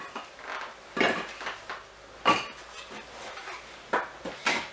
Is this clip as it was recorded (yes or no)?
yes